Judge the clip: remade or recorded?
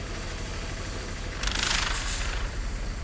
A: remade